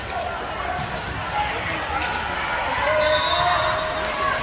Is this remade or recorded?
recorded